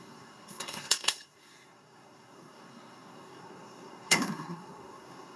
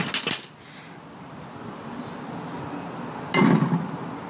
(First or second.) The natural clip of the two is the second